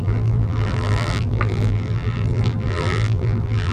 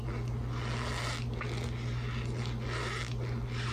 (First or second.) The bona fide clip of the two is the second